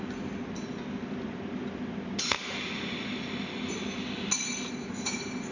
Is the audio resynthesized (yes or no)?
no